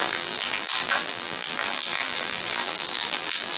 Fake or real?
fake